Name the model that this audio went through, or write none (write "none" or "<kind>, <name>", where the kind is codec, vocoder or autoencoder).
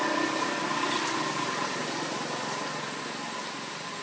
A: none